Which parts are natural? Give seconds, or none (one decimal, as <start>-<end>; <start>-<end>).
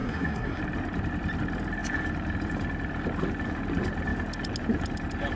0.6-5.3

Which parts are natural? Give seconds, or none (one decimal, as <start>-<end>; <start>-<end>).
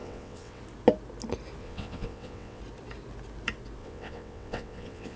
0.6-1.6; 2.6-3.8